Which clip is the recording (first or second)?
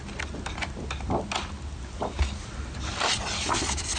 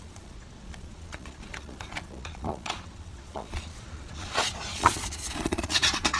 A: first